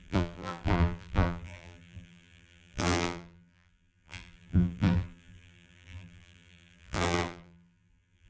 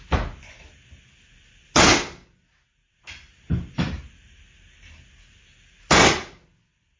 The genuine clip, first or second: second